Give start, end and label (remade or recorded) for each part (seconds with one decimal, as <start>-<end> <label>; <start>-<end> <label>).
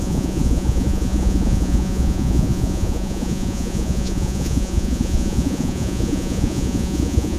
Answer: 0.0-7.4 remade